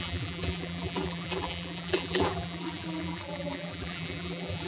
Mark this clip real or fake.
fake